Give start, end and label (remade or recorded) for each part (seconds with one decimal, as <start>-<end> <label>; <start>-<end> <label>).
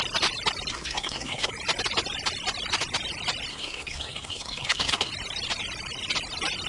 0.0-0.7 recorded; 0.7-1.5 remade; 1.5-3.5 recorded; 3.5-5.1 remade; 5.1-6.7 recorded